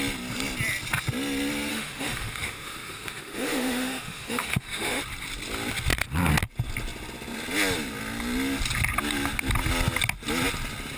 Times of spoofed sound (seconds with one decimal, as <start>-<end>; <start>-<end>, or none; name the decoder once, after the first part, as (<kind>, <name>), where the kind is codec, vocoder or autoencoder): 1.7-5.0 (autoencoder, DAC-VAE)